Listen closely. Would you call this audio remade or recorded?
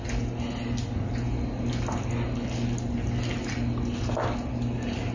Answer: recorded